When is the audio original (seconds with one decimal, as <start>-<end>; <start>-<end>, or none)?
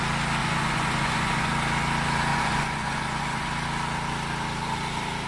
0.0-0.4; 1.5-2.3; 3.5-5.3